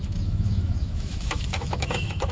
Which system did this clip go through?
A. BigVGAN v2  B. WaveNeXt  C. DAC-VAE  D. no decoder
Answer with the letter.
C